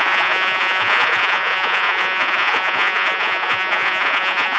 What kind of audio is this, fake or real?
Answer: fake